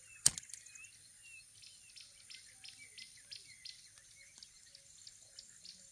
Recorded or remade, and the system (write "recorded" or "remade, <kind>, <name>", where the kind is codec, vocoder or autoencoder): recorded